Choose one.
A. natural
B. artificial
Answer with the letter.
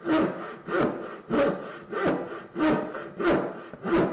A